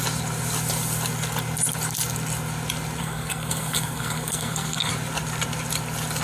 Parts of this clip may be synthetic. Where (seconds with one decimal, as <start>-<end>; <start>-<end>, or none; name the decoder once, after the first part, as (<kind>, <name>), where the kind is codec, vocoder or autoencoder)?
3.0-4.9 (codec, SNAC)